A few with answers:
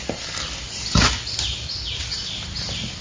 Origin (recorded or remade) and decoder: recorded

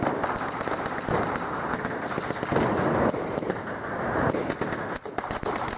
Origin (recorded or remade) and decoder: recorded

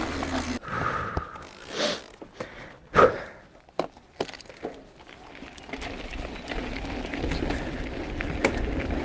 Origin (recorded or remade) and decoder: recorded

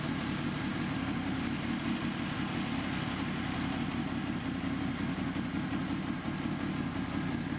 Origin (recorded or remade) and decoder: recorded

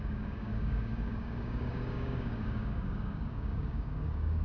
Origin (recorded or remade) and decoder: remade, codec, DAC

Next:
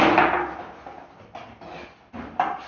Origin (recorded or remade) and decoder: recorded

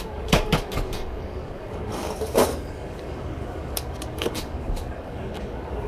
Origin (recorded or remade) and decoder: remade, codec, DAC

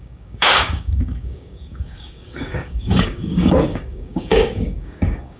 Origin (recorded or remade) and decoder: remade, codec, DAC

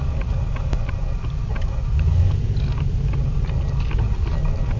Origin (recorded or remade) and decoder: recorded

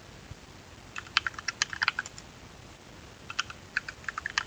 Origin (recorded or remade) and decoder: recorded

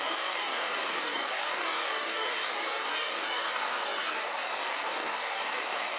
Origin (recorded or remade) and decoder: remade, codec, DAC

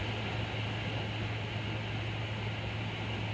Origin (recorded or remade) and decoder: recorded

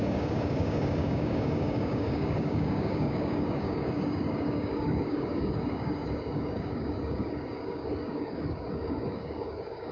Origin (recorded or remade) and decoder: remade, codec, DAC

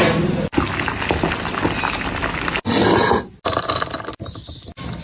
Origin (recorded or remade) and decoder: recorded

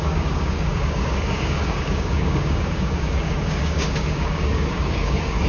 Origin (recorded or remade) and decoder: remade, codec, DAC